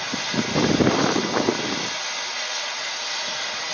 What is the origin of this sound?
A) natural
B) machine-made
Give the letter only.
A